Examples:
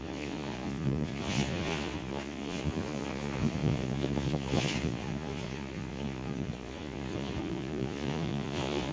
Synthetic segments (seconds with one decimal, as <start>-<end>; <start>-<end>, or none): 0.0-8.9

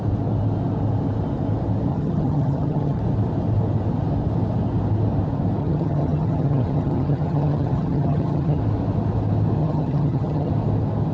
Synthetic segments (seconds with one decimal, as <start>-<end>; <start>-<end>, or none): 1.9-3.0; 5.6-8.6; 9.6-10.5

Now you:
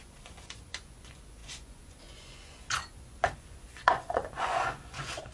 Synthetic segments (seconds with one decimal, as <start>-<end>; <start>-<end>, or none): 0.0-5.3

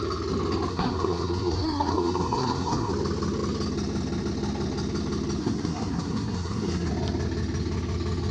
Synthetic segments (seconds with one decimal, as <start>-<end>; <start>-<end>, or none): 0.7-2.9; 5.4-6.9